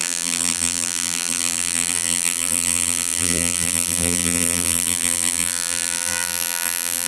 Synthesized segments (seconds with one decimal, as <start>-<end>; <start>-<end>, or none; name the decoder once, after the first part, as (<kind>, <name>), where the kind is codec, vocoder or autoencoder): 0.0-7.1 (vocoder, BigVGAN v2)